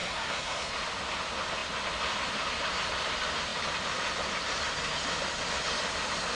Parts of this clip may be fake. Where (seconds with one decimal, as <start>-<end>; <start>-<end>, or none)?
0.0-0.7